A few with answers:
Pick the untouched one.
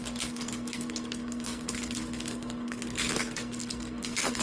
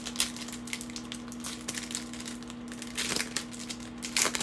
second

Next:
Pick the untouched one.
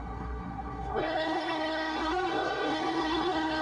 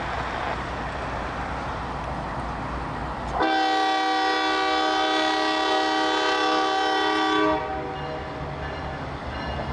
second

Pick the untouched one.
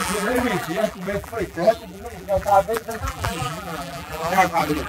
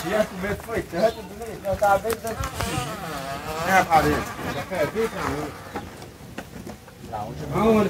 second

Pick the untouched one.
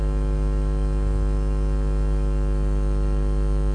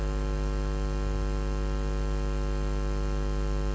second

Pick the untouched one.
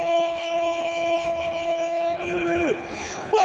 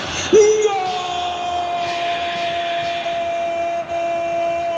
second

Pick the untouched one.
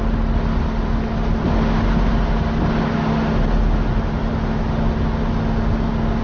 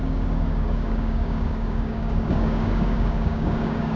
first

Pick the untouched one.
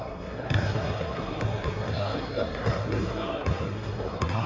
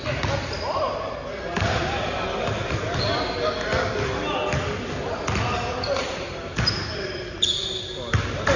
second